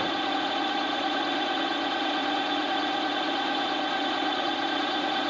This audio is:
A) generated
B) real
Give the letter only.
A